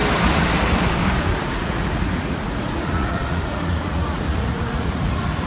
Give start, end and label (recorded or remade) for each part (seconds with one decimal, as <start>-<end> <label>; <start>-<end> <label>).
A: 0.0-1.4 recorded; 1.4-5.5 remade